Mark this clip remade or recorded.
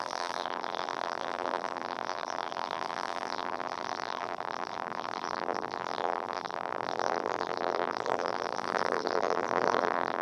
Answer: remade